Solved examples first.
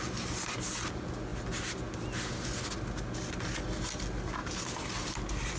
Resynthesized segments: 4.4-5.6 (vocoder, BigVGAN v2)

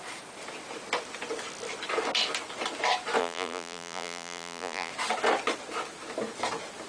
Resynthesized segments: 3.2-4.9 (vocoder, BigVGAN v2)